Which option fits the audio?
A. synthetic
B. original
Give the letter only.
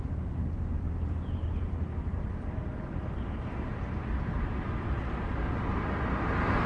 B